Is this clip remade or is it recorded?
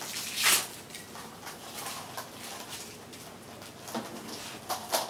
recorded